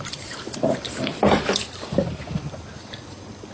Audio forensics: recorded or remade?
remade